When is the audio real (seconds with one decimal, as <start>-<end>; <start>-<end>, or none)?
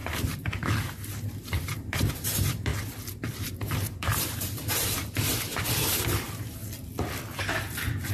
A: 2.7-3.4; 5.0-6.0; 6.6-8.1